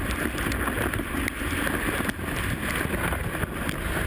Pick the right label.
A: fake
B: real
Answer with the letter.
B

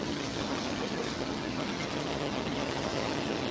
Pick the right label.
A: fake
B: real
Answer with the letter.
A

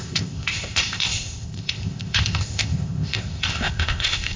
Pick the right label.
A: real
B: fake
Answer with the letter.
B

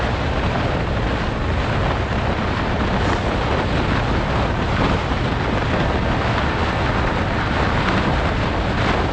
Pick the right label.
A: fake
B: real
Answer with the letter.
B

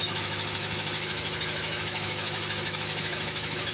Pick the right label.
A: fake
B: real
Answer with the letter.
A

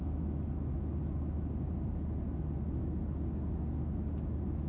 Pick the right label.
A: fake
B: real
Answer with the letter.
B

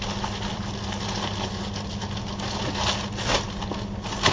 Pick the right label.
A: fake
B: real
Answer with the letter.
B